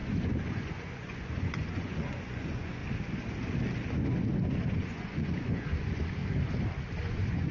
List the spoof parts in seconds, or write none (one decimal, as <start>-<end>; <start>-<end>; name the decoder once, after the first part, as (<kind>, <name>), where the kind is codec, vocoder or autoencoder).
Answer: 0.0-2.8 (vocoder, Vocos); 4.7-6.2; 7.0-7.5